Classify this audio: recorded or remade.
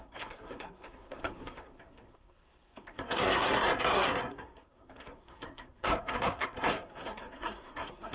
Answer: remade